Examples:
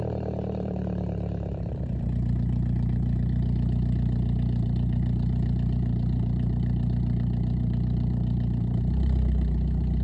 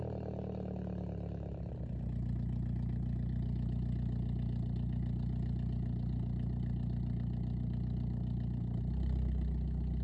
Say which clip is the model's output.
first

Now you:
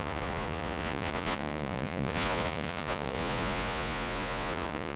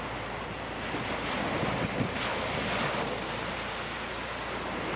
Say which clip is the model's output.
first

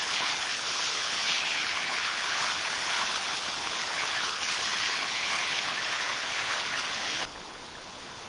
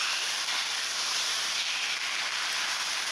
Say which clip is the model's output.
first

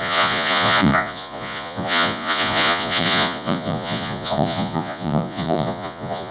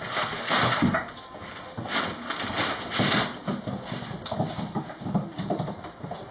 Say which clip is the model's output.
first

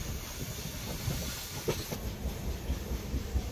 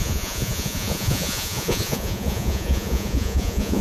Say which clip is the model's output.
second